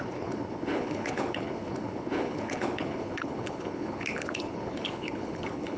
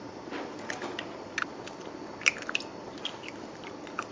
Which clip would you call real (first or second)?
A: second